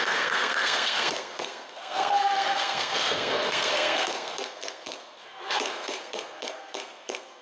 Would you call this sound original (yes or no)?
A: no